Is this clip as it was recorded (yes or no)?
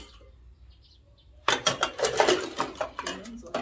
yes